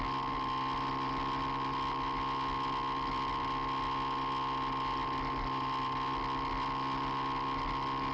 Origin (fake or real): real